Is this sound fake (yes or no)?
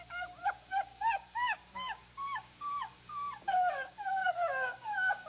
yes